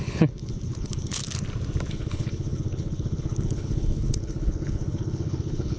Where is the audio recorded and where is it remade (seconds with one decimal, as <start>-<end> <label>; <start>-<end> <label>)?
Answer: 0.0-1.2 remade; 1.2-1.9 recorded; 1.9-5.8 remade